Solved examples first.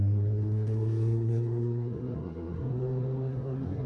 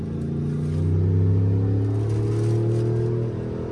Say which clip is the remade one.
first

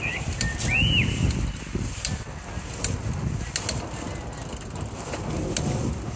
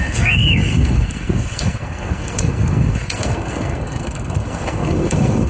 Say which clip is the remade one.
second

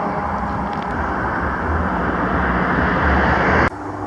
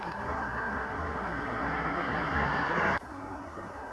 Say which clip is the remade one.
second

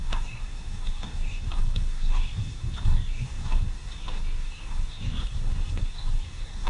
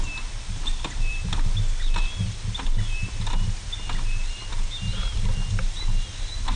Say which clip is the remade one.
first